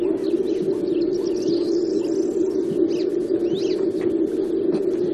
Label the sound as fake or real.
real